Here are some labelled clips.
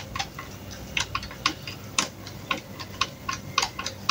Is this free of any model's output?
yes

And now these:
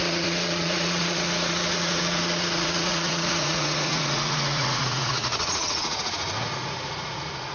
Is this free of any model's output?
no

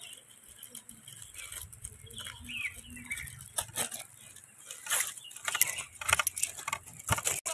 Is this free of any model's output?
yes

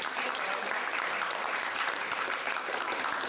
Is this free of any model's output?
no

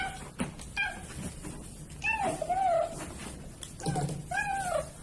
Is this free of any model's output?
yes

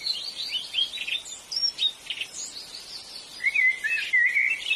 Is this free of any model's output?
yes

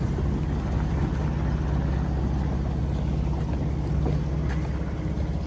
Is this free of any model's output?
yes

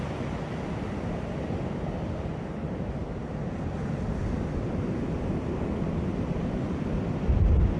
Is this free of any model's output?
yes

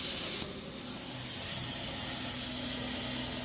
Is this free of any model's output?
yes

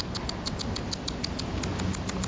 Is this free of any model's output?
yes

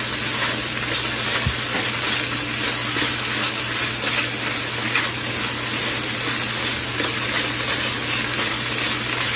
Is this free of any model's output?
yes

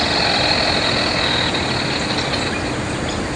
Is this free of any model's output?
yes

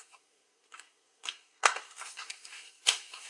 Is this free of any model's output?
no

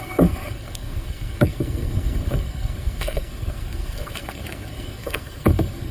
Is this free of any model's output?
no